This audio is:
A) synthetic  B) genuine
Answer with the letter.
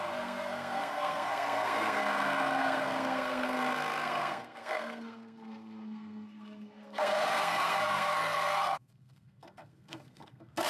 A